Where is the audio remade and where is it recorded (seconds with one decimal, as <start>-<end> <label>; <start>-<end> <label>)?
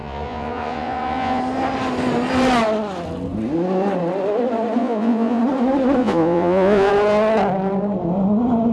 0.0-1.4 remade; 1.4-4.8 recorded; 4.8-5.4 remade; 5.4-6.0 recorded; 6.0-6.9 remade; 6.9-8.7 recorded